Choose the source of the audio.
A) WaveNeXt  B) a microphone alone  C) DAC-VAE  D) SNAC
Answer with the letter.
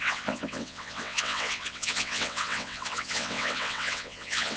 A